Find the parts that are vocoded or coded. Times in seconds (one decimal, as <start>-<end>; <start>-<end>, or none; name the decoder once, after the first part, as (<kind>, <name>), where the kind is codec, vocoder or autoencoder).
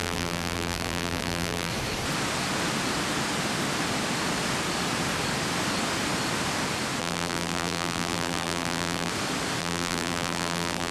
0.0-1.7 (vocoder, BigVGAN v2); 7.0-9.1; 9.6-10.9